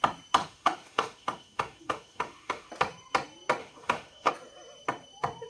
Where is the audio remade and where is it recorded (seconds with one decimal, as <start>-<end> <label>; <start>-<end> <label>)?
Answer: 0.0-0.4 recorded; 0.4-2.7 remade; 2.7-3.6 recorded; 3.6-4.3 remade; 4.3-5.5 recorded